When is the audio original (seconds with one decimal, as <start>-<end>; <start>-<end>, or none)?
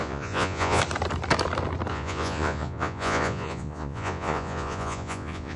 0.8-1.9